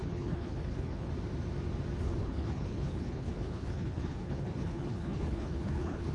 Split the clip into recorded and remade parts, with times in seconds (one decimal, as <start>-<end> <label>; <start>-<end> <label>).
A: 0.0-1.1 remade; 1.1-2.2 recorded; 2.2-6.1 remade